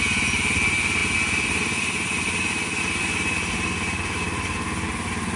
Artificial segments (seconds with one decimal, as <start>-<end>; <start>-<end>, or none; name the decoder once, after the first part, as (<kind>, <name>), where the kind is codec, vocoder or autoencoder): none